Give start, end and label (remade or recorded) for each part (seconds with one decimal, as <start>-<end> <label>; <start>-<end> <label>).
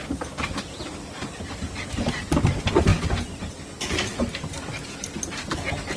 0.0-6.0 recorded